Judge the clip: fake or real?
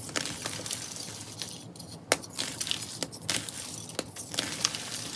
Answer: real